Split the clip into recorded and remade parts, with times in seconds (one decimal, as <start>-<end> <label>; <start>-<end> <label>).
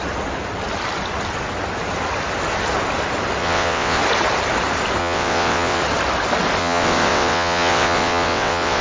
0.0-3.4 recorded; 3.4-4.0 remade; 4.0-5.0 recorded; 5.0-5.8 remade; 5.8-6.6 recorded; 6.6-8.8 remade